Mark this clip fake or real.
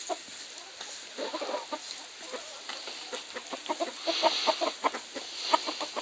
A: real